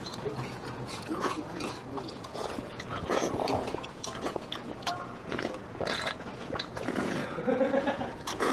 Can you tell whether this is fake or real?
fake